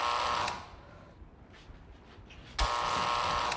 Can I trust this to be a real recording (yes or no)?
yes